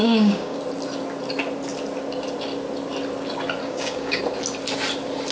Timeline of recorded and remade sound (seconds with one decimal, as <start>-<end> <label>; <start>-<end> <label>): 0.0-0.6 remade; 0.6-3.6 recorded; 3.6-4.2 remade; 4.2-5.3 recorded